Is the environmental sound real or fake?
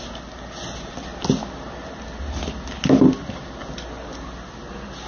real